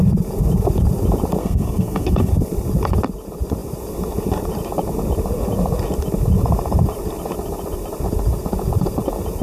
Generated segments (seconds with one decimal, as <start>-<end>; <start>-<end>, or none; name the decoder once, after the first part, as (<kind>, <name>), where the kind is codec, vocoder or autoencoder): 1.4-2.3 (codec, SNAC)